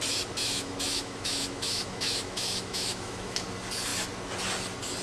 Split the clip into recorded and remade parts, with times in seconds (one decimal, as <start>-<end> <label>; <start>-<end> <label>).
0.0-0.4 recorded; 0.4-3.4 remade; 3.4-5.0 recorded